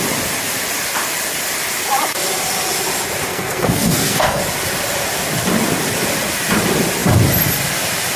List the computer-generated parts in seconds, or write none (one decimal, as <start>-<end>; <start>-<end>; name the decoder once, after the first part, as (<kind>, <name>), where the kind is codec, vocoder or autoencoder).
3.3-4.4 (codec, SNAC)

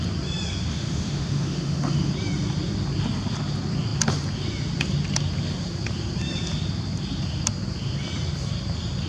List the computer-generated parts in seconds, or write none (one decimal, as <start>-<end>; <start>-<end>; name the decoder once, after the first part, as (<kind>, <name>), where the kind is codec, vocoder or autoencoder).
0.7-2.1 (autoencoder, DAC-VAE)

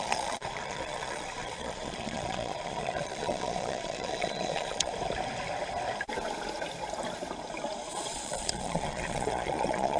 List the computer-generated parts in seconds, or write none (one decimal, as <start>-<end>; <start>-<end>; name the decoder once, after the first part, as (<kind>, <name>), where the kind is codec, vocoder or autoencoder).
0.0-4.9 (vocoder, Vocos); 7.9-10.0

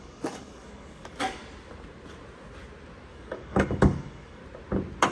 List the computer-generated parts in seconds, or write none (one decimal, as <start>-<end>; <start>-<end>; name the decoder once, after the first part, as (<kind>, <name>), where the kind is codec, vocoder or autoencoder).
0.0-1.4 (codec, DAC); 3.1-4.4